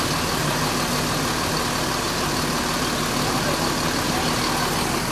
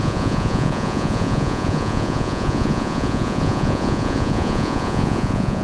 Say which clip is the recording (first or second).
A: first